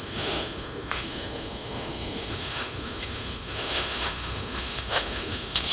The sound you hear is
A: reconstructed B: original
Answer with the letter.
A